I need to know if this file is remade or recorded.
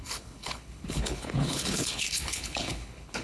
remade